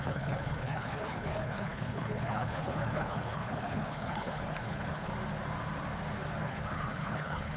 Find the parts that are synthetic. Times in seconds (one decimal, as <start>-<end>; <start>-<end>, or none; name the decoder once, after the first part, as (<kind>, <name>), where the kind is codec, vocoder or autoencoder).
0.0-5.1 (codec, HILCodec); 6.4-7.6